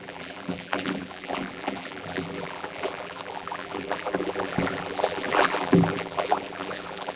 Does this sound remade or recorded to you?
remade